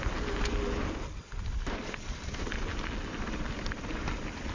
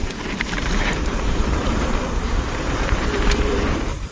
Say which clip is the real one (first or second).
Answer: first